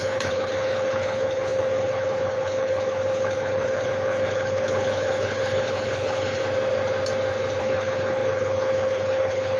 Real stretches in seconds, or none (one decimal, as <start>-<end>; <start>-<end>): 6.4-7.6